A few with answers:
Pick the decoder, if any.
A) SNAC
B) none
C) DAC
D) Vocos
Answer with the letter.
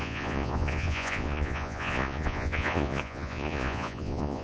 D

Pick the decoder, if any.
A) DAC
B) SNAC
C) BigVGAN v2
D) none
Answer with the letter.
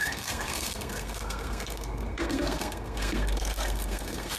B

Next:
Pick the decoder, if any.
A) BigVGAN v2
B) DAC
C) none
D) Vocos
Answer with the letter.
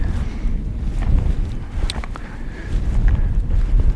C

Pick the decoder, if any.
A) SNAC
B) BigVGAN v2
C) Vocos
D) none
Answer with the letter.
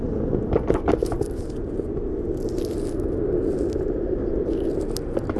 D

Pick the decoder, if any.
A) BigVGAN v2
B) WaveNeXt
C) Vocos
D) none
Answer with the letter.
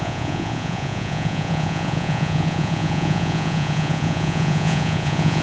C